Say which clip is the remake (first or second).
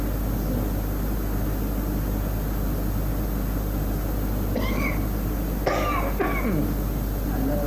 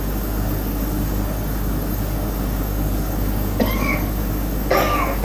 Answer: second